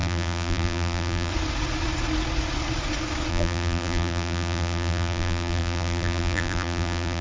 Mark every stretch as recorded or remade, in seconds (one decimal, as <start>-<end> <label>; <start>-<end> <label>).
0.0-1.3 remade; 1.3-3.3 recorded; 3.3-7.2 remade